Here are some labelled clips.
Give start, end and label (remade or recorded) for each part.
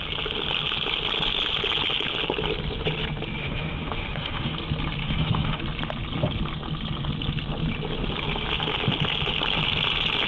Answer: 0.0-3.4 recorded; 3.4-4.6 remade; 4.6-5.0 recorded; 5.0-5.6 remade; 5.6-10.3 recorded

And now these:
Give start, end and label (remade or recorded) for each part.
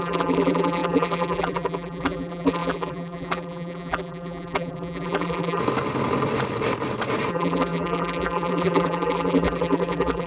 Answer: 0.0-5.6 remade; 5.6-7.3 recorded; 7.3-10.3 remade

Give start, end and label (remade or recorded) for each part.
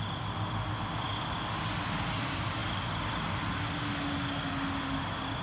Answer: 0.0-5.4 recorded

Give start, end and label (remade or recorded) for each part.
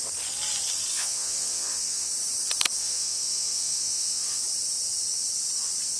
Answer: 0.0-0.9 recorded; 0.9-2.1 remade; 2.1-2.8 recorded; 2.8-4.4 remade; 4.4-6.0 recorded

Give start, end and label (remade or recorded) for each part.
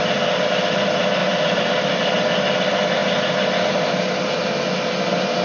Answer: 0.0-1.2 recorded; 1.2-1.7 remade; 1.7-5.4 recorded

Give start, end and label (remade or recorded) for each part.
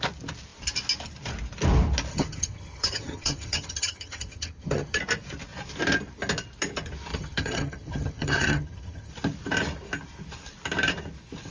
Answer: 0.0-2.1 recorded; 2.1-5.0 remade; 5.0-7.1 recorded; 7.1-9.1 remade; 9.1-11.5 recorded